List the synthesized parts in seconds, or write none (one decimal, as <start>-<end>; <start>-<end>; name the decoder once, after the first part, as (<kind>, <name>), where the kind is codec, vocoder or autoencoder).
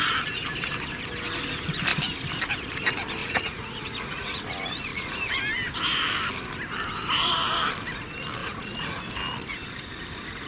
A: 3.2-4.4 (vocoder, Vocos); 4.9-5.4; 8.4-9.0